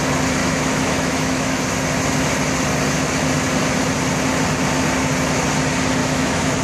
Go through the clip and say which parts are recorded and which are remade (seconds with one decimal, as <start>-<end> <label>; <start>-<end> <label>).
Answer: 0.0-0.4 recorded; 0.4-1.6 remade; 1.6-6.0 recorded; 6.0-6.6 remade